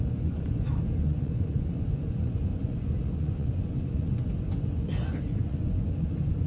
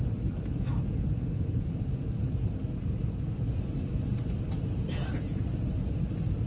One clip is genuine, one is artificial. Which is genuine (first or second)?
second